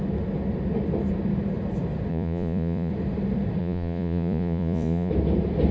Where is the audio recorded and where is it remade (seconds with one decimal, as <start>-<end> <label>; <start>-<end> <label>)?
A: 0.0-2.1 recorded; 2.1-2.9 remade; 2.9-3.6 recorded; 3.6-5.1 remade; 5.1-5.7 recorded